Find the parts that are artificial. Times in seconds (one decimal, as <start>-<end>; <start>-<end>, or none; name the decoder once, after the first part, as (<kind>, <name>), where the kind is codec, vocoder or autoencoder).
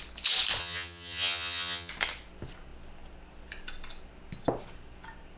0.6-1.9 (vocoder, HiFi-GAN)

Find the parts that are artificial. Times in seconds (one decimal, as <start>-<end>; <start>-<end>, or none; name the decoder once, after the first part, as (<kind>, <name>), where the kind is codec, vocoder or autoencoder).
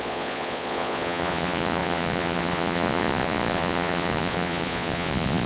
0.0-5.5 (vocoder, Vocos)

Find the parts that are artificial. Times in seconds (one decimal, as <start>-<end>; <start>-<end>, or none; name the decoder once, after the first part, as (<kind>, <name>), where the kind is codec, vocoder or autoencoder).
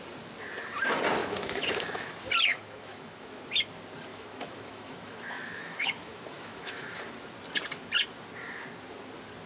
1.2-2.1 (autoencoder, DAC-VAE); 2.5-3.3; 4.1-7.0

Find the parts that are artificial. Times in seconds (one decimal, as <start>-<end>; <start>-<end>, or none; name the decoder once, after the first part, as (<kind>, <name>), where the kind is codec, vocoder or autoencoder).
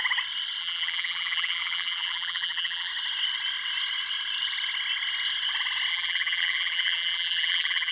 0.6-2.9 (vocoder, BigVGAN v2); 5.9-7.9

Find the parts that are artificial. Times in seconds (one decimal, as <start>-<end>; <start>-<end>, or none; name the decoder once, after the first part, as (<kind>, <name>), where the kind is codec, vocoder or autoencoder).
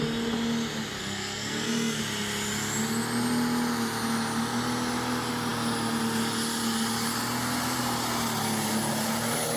1.0-2.0 (codec, SNAC)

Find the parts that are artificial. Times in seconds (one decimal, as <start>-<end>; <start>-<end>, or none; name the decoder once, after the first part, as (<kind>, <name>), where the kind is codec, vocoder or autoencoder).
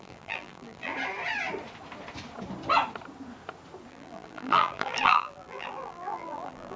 0.0-0.9 (vocoder, BigVGAN v2); 3.9-6.8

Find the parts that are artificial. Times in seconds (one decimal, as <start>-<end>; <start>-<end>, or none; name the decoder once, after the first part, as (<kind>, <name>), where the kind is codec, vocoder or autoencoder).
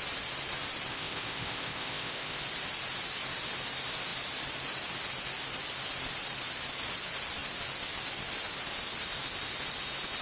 0.9-2.4 (codec, ZipCodec)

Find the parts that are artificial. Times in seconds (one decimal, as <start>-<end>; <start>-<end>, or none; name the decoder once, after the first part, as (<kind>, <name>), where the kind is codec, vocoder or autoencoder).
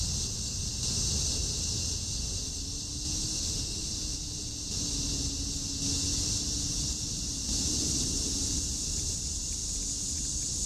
3.3-3.8 (autoencoder, DAC-VAE)